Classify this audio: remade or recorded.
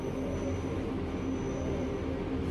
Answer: recorded